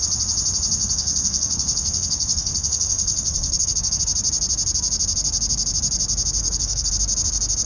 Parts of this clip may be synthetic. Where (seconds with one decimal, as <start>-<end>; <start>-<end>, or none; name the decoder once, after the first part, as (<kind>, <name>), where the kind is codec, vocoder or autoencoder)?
0.8-4.0 (codec, SNAC); 6.4-6.9